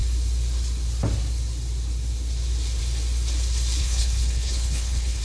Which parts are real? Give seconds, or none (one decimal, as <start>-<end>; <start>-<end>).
0.0-3.8